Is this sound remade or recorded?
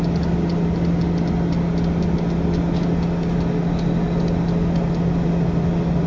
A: recorded